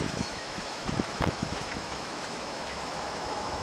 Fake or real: fake